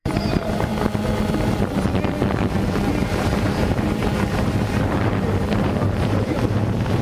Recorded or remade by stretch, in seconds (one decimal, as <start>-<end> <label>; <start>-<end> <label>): 0.0-0.7 remade; 0.7-2.9 recorded; 2.9-7.0 remade